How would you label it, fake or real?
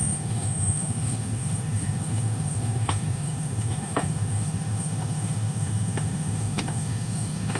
fake